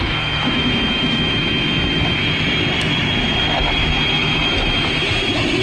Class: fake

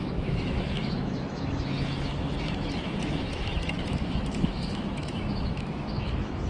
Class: fake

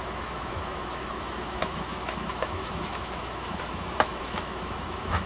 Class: fake